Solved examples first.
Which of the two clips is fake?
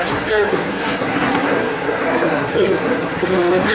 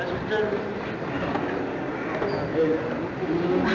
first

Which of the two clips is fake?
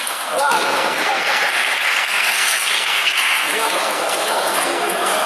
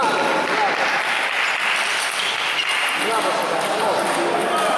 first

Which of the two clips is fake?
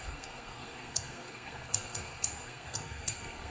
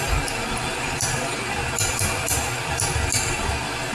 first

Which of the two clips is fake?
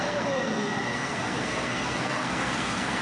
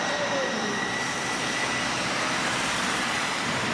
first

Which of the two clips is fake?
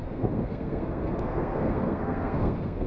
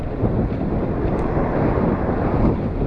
first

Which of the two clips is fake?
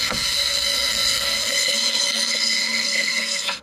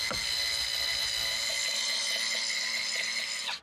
first